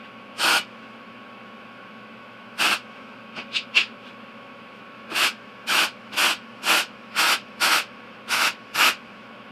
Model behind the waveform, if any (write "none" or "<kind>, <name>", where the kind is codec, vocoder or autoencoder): autoencoder, DAC-VAE